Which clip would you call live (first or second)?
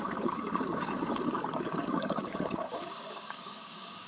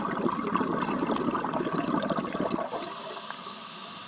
second